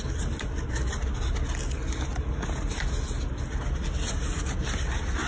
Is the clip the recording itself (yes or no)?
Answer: yes